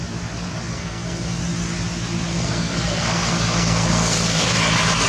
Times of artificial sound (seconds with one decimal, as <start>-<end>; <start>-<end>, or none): 0.7-1.4; 2.3-4.6